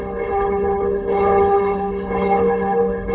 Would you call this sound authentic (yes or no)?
no